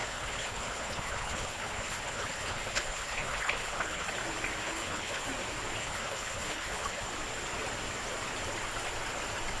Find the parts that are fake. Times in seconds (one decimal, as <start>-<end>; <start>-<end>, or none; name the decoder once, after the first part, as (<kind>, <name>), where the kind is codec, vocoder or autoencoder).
0.0-4.1 (codec, HILCodec); 4.6-5.3; 5.8-7.1